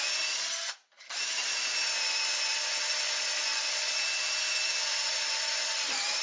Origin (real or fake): real